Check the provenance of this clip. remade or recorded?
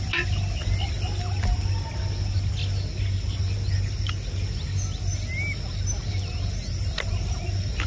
recorded